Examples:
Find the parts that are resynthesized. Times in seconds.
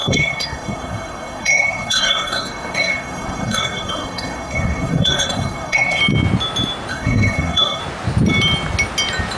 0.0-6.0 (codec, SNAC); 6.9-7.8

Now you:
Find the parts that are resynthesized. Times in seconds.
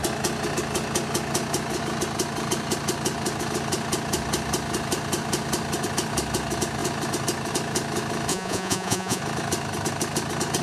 8.3-9.2 (vocoder, Vocos)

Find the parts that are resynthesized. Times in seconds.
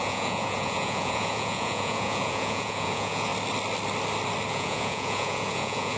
0.0-3.3 (vocoder, Vocos); 4.5-6.0